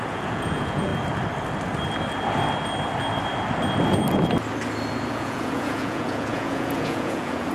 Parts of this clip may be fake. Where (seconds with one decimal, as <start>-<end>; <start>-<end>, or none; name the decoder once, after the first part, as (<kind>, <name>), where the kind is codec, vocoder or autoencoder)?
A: 0.0-0.9 (vocoder, Vocos); 5.1-7.5

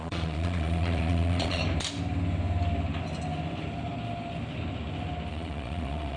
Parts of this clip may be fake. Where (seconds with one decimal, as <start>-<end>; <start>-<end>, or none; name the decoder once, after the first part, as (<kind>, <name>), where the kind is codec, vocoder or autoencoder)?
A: 0.0-1.6 (vocoder, Vocos); 5.3-6.2